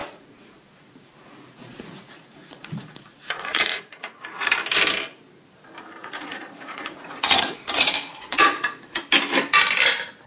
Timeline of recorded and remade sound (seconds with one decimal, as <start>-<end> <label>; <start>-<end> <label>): 0.0-4.5 remade; 4.5-6.0 recorded; 6.0-9.0 remade; 9.0-10.3 recorded